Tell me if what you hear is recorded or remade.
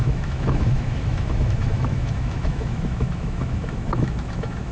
remade